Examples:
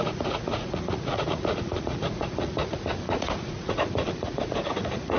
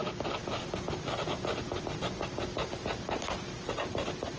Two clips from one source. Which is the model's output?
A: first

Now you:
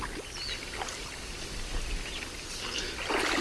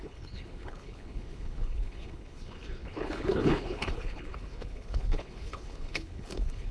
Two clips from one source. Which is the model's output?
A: second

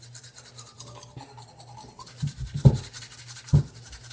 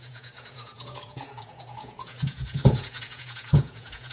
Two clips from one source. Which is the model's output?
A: second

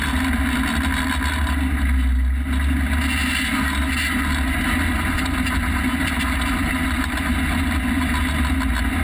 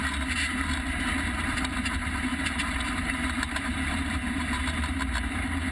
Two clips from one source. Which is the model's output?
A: second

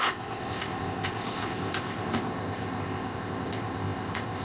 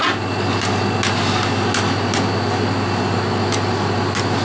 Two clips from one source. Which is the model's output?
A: first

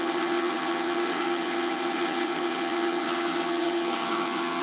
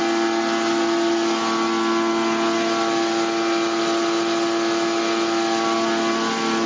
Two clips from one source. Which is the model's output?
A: first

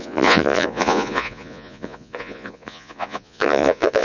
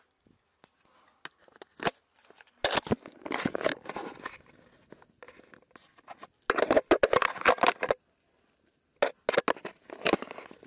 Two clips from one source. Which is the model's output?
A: first